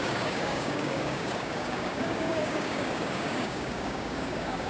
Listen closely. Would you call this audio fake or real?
fake